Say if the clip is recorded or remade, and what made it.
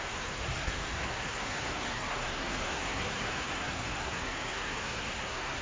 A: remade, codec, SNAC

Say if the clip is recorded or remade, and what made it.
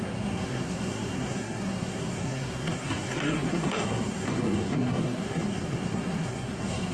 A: remade, codec, SNAC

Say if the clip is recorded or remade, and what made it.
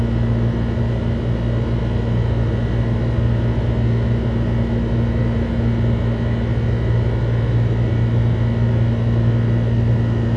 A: recorded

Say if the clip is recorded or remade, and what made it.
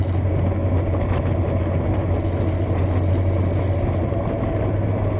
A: recorded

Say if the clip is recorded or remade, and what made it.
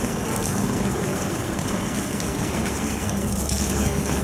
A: remade, codec, SNAC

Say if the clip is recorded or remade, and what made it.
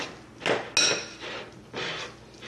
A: recorded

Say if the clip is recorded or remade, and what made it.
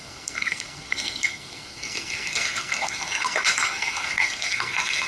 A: remade, codec, SNAC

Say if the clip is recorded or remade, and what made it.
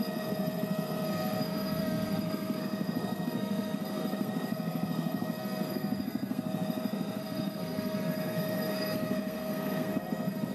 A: remade, codec, SNAC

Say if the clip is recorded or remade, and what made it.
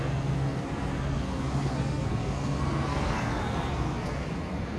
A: remade, codec, SNAC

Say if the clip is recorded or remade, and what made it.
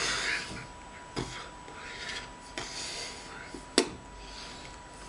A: recorded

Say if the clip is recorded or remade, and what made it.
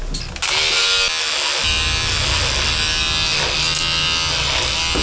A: recorded